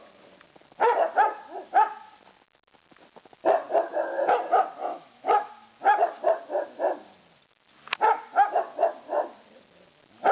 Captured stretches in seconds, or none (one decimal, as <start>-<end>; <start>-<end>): 0.0-4.9; 5.5-10.3